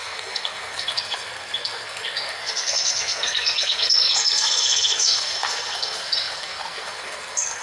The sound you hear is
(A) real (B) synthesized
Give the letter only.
B